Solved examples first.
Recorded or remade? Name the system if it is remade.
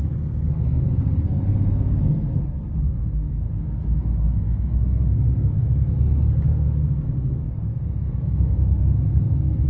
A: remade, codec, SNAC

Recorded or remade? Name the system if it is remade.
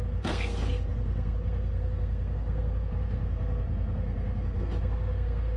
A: remade, codec, SNAC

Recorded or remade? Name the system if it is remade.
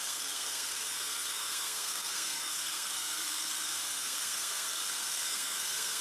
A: remade, codec, SNAC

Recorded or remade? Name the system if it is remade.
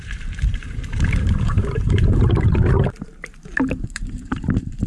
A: remade, vocoder, BigVGAN v2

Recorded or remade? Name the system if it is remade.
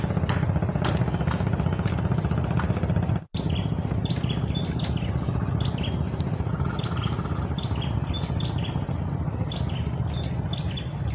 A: recorded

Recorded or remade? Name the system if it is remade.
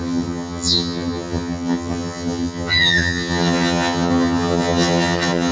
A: remade, vocoder, HiFi-GAN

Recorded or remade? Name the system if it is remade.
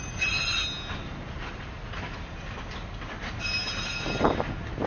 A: recorded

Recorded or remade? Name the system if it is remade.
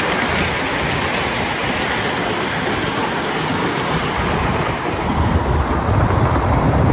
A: recorded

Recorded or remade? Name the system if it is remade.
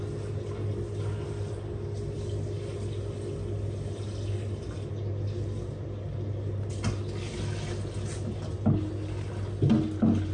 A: recorded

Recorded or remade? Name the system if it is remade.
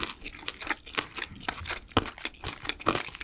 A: recorded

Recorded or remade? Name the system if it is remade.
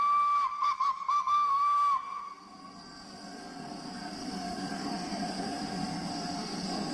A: remade, codec, SNAC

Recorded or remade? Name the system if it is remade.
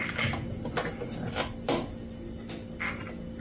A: recorded